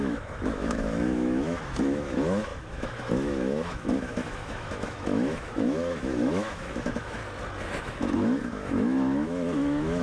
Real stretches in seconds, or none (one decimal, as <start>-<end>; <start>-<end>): 7.2-7.8